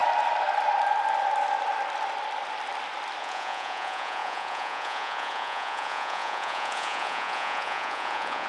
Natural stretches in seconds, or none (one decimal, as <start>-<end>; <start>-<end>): 0.0-3.2